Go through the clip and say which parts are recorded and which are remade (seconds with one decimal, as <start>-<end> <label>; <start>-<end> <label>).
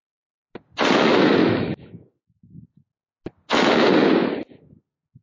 0.0-1.4 recorded; 1.4-2.4 remade; 2.4-5.2 recorded